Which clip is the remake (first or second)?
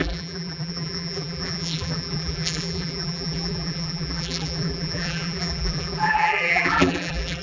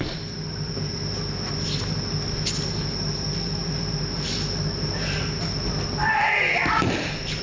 first